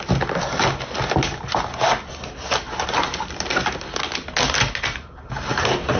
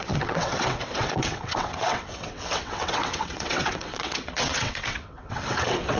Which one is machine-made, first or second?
second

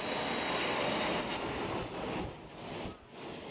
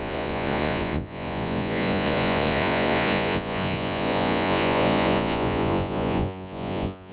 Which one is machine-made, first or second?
second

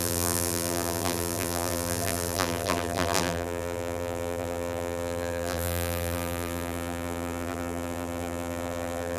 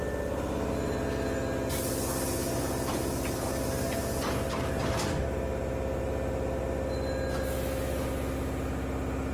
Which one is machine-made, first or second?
first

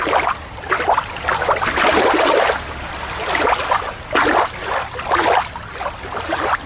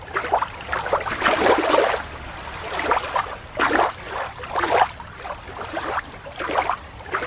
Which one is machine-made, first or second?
second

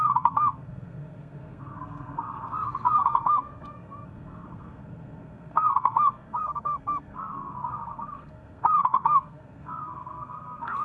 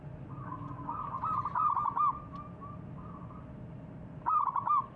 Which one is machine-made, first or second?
first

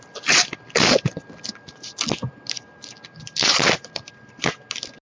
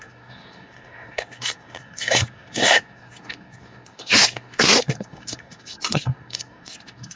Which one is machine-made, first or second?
second